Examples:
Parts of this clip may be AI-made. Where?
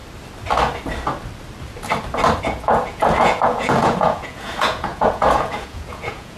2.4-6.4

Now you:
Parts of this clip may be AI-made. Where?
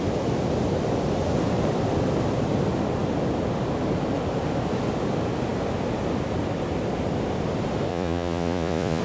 7.9-9.0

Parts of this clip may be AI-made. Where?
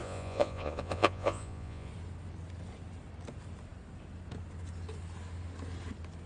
0.0-1.9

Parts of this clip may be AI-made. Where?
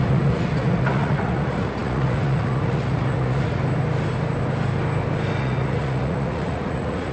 0.0-3.6; 5.4-7.1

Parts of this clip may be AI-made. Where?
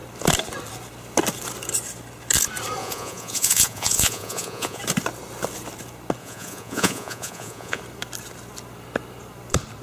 2.8-4.8; 6.2-7.8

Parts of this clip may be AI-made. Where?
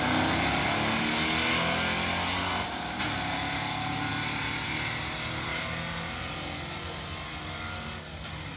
none